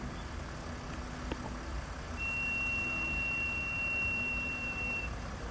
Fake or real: real